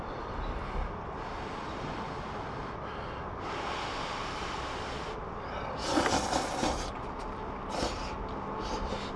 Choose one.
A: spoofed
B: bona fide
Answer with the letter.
B